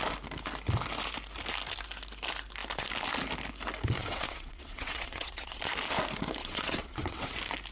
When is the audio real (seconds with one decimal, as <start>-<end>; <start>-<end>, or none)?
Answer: 0.0-4.0; 5.6-6.4; 7.3-7.7